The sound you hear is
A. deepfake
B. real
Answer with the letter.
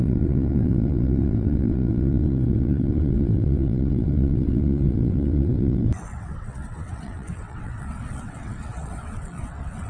A